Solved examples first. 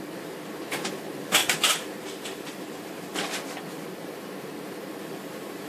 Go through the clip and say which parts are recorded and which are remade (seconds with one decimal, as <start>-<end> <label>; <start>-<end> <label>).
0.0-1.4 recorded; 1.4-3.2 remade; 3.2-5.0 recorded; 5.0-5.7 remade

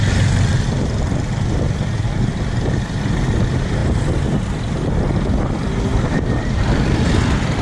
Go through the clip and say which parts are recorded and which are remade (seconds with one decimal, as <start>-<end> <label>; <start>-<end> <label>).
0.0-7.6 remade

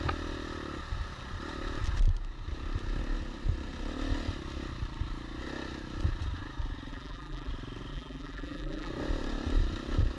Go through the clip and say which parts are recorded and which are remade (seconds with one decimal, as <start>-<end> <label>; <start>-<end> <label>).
0.0-6.9 recorded; 6.9-7.5 remade; 7.5-7.9 recorded; 7.9-8.9 remade; 8.9-10.2 recorded

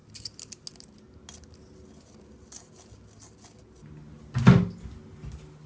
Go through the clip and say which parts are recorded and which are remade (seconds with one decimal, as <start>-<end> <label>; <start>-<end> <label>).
0.0-5.7 recorded